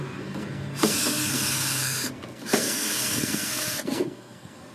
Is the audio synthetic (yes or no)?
yes